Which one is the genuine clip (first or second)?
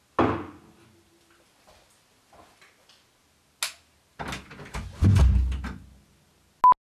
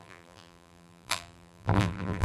first